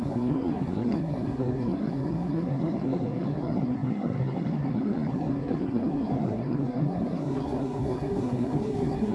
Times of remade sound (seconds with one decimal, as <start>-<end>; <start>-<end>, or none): 0.0-9.1